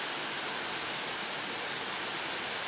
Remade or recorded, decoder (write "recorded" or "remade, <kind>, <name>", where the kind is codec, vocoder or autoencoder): recorded